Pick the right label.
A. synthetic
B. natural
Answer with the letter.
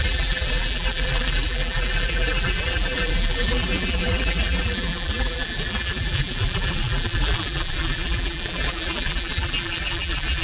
A